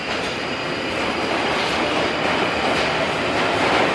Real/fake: real